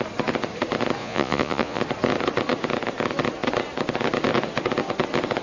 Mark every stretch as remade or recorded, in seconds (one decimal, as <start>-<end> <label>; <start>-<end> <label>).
0.0-1.0 recorded; 1.0-1.8 remade; 1.8-5.4 recorded